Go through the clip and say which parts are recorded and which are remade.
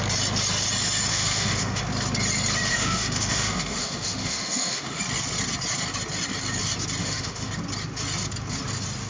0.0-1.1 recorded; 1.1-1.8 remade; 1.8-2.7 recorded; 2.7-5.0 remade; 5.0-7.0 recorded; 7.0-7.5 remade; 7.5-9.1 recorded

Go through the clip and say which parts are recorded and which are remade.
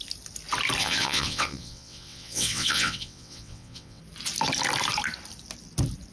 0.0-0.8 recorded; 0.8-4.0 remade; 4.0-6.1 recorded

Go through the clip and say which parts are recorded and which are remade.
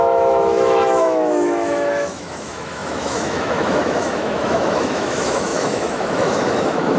0.0-7.0 remade